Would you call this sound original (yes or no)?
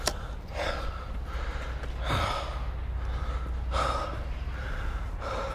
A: yes